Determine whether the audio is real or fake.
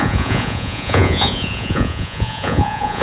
fake